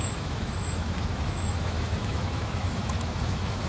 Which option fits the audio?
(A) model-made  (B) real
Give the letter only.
A